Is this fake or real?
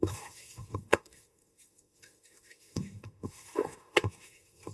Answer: fake